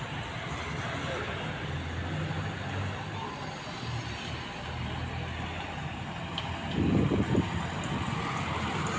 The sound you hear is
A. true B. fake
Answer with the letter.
A